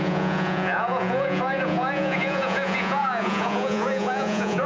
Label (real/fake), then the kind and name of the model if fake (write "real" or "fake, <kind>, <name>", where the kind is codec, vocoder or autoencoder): fake, vocoder, Vocos